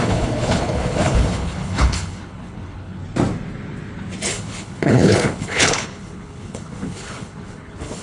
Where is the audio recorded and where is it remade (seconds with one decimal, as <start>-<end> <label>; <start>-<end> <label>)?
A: 0.0-3.0 remade; 3.0-4.2 recorded; 4.2-8.0 remade